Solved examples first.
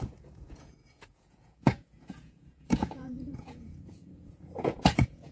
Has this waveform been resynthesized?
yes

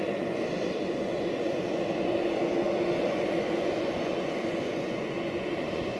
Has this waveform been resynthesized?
yes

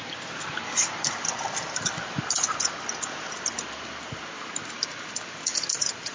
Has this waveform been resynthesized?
no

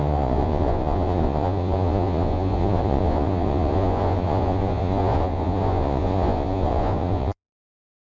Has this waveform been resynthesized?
yes